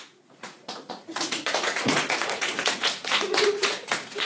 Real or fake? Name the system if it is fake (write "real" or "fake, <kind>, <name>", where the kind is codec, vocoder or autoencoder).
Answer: fake, vocoder, Vocos